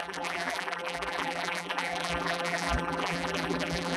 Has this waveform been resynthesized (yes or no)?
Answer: yes